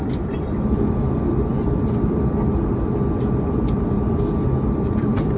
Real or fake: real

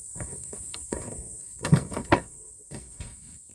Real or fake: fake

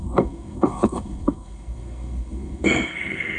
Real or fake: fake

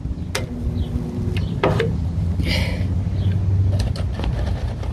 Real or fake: real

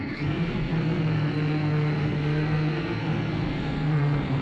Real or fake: fake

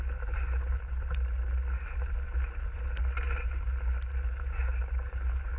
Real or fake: real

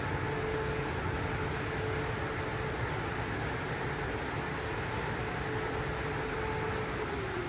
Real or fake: real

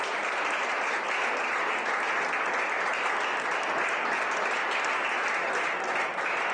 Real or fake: real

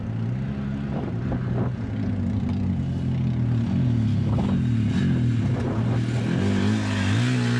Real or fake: real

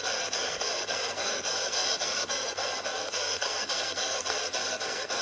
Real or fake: fake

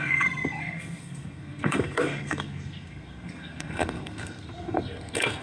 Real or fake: fake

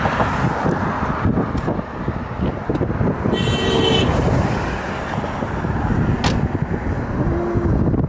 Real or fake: real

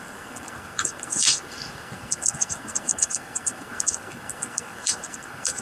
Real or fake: fake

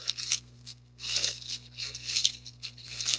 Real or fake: fake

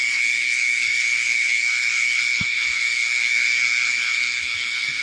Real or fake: fake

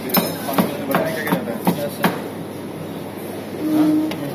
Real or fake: real